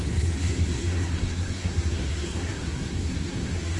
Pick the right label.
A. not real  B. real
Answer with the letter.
A